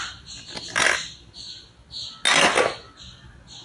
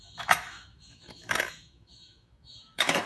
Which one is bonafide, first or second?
first